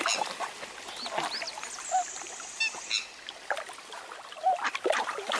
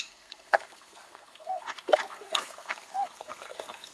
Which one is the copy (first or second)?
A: second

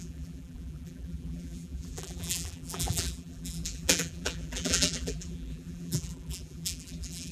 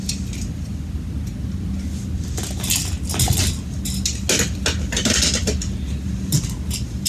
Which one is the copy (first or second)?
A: first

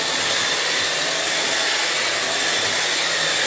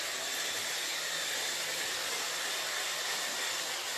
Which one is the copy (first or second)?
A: second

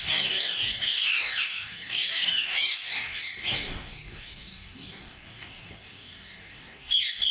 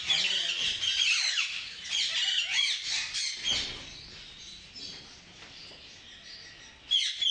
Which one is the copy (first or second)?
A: first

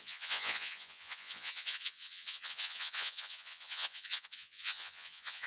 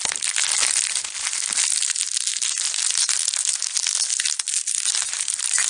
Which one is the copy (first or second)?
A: first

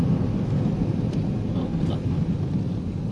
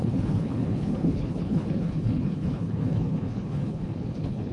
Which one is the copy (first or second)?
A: second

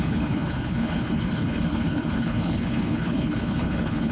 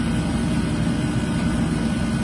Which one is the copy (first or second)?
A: first